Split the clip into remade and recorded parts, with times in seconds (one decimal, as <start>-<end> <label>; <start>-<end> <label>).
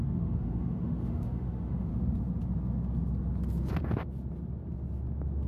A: 0.0-1.9 remade; 1.9-5.5 recorded